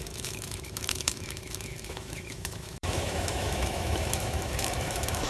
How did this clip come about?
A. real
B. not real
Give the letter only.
B